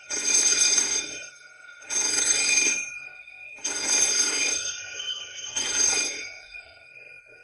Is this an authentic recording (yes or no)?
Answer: no